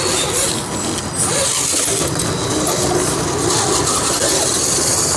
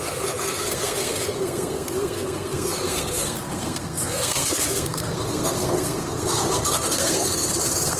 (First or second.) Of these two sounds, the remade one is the second